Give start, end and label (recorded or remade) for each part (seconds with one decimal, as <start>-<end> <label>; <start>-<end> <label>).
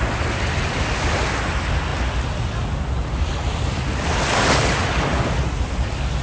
0.0-6.2 recorded